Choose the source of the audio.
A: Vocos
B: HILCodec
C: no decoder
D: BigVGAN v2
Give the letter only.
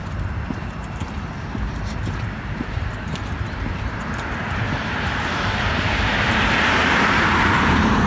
D